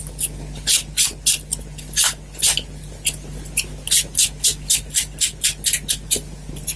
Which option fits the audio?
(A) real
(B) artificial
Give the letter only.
A